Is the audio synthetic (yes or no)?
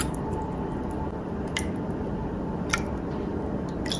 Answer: no